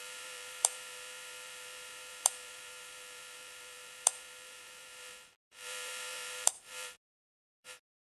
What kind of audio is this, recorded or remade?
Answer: remade